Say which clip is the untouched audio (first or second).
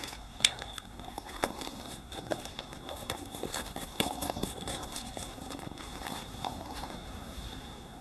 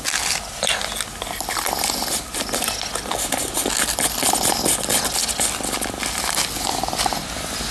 second